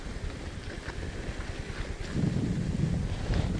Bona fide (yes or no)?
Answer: no